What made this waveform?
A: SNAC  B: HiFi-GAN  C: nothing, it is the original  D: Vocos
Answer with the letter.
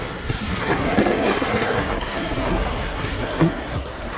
A